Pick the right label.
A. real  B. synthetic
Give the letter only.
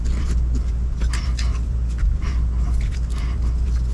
A